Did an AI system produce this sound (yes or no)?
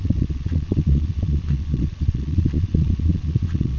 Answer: yes